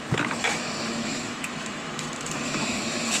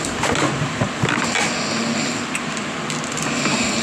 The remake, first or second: first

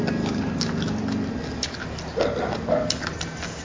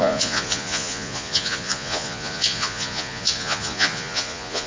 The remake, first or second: second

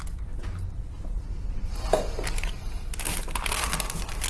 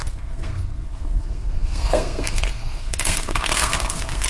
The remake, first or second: second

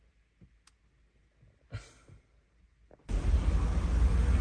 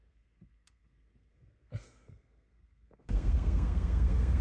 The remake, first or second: second